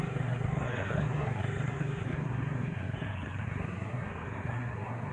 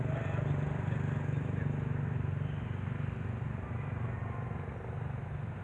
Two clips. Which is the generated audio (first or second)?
first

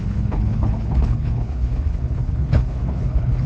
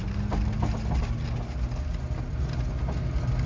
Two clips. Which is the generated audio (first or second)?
first